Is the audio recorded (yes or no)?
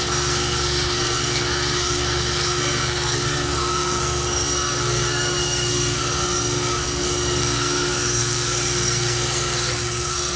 no